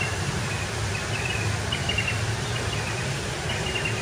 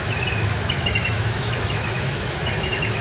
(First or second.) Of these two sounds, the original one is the first